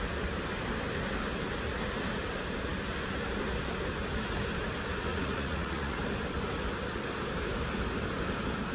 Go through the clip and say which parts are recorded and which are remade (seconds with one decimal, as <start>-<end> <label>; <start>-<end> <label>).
0.0-5.1 recorded; 5.1-6.0 remade; 6.0-8.7 recorded